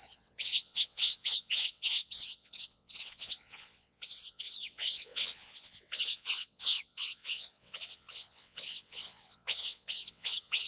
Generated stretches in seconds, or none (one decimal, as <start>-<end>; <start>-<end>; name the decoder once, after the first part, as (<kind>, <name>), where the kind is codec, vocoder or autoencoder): 0.0-10.7 (vocoder, WaveNeXt)